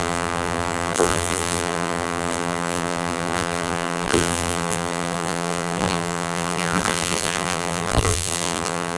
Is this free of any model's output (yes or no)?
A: no